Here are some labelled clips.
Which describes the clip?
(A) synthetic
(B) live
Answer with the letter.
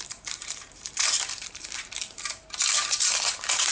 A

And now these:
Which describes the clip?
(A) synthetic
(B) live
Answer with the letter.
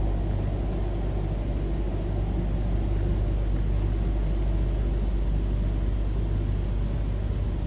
B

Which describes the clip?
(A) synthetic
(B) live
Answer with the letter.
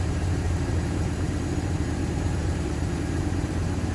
A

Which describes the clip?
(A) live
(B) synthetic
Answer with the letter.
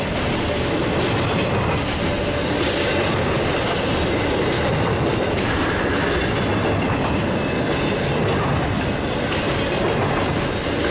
A